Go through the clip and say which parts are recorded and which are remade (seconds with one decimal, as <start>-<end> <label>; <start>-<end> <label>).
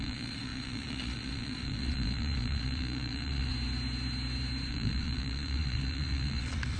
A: 0.0-3.5 remade; 3.5-4.7 recorded; 4.7-6.8 remade